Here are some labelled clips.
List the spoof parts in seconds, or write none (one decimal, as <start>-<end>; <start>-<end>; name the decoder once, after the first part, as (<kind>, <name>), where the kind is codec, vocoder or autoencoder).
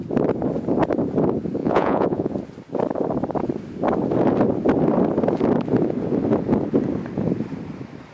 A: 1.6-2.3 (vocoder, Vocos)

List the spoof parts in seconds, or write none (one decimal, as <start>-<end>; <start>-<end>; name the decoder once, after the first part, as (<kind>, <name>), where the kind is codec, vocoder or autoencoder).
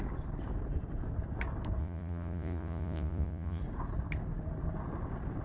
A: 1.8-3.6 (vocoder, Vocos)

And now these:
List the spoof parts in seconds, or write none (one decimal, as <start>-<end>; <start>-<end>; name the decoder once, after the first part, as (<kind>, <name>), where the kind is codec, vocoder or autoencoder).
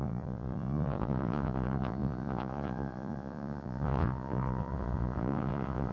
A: 0.0-5.9 (vocoder, Vocos)